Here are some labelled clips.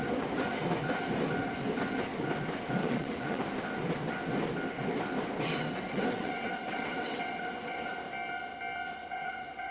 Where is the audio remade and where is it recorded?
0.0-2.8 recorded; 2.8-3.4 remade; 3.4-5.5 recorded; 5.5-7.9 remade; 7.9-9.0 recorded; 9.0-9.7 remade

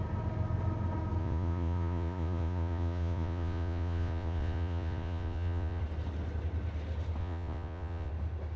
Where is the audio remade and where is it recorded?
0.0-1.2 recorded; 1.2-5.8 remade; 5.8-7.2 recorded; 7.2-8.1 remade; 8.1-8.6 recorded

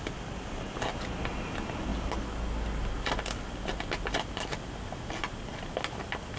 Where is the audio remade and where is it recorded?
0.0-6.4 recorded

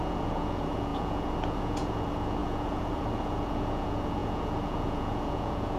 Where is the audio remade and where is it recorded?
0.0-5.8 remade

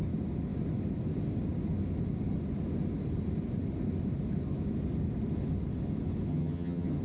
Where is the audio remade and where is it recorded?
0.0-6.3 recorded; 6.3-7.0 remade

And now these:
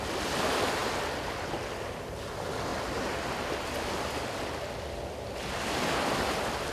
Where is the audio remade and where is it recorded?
0.0-6.7 recorded

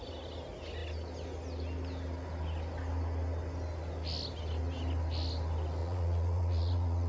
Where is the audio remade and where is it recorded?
0.0-5.8 recorded; 5.8-7.1 remade